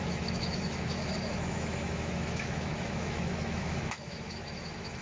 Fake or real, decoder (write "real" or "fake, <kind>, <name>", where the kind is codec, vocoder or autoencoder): fake, autoencoder, DAC-VAE